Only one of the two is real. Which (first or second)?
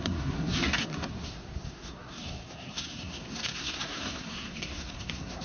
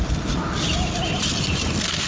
second